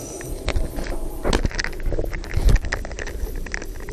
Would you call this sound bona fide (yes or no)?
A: yes